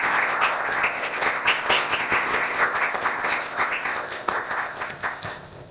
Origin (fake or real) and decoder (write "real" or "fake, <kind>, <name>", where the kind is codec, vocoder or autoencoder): fake, codec, ZipCodec